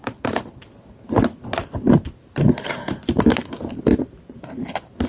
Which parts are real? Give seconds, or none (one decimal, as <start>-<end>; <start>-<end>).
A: 0.0-5.1